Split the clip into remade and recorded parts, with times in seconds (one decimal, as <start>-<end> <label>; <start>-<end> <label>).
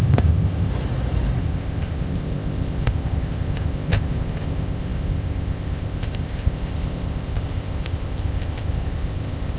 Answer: 0.0-0.7 remade; 0.7-1.4 recorded; 1.4-9.6 remade